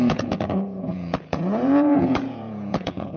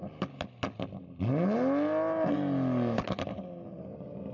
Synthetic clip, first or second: first